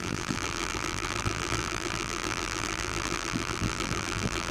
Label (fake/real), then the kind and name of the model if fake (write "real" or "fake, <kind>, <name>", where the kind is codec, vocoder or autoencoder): fake, vocoder, BigVGAN v2